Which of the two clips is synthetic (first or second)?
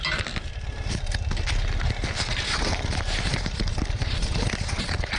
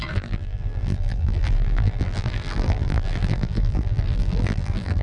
second